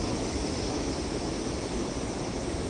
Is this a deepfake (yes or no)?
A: yes